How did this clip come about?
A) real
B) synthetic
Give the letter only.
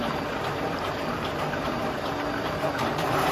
B